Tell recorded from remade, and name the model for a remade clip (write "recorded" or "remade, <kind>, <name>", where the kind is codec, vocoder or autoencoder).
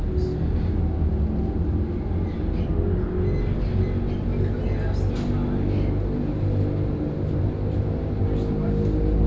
recorded